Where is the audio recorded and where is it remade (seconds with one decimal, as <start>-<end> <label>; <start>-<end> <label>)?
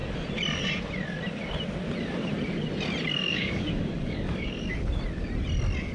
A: 0.0-3.1 recorded; 3.1-4.9 remade; 4.9-5.9 recorded